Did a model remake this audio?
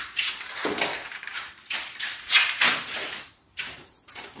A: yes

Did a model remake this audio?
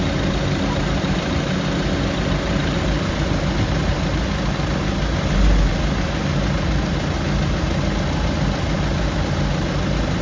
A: no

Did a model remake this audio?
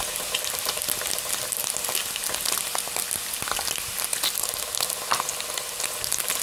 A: no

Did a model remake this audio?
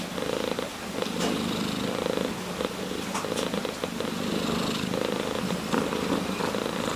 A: no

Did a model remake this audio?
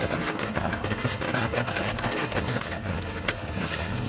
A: yes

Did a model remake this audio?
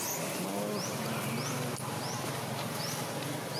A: no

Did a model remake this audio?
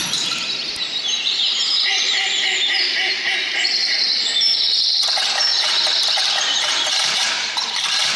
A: yes